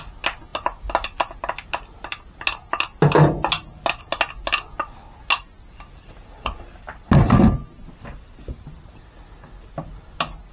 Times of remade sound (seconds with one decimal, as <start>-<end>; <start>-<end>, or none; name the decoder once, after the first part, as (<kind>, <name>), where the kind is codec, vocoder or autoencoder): none